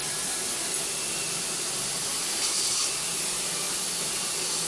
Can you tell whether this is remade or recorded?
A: recorded